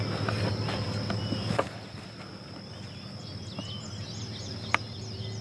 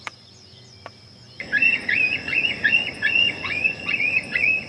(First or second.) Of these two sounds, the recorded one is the first